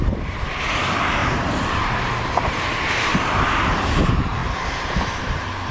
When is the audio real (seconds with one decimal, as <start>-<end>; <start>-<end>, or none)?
0.0-0.7